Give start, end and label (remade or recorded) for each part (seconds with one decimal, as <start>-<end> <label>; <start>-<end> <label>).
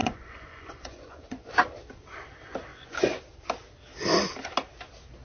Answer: 0.0-1.5 remade; 1.5-2.7 recorded; 2.7-3.2 remade; 3.2-5.2 recorded